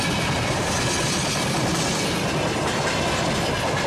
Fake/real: real